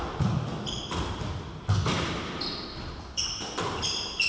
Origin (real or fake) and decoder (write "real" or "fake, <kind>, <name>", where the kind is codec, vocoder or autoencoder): real